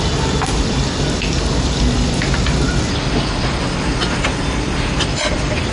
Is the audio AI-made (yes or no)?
no